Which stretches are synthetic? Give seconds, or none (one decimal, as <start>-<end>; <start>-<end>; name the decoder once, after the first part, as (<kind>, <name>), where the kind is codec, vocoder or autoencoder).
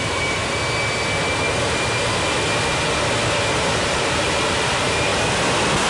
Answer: 0.0-0.4 (vocoder, BigVGAN v2); 3.6-5.1